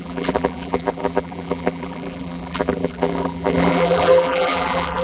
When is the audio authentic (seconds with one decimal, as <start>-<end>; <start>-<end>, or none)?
none